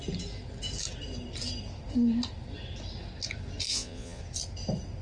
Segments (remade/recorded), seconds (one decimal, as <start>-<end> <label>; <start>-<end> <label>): 0.0-3.7 recorded; 3.7-4.2 remade; 4.2-5.0 recorded